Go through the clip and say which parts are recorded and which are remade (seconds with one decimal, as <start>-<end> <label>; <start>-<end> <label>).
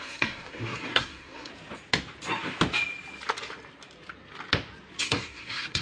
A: 0.0-1.5 remade; 1.5-5.0 recorded; 5.0-5.8 remade